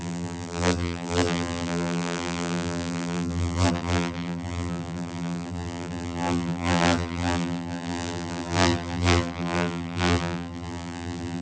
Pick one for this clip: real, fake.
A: fake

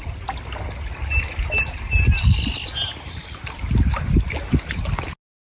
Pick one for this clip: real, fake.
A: real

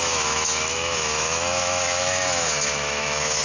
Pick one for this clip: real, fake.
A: fake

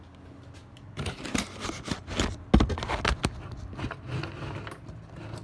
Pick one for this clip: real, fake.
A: real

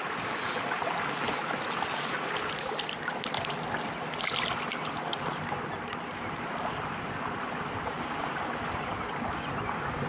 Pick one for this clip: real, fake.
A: real